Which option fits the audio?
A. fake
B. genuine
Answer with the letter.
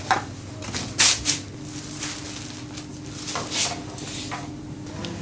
B